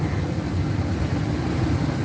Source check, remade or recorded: recorded